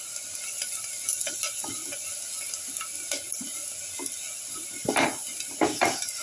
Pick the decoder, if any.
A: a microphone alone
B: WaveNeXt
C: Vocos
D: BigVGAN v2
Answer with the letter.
A